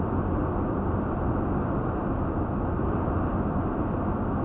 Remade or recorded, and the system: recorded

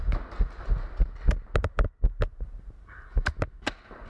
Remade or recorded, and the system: recorded